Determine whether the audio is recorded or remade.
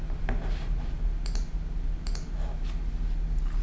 recorded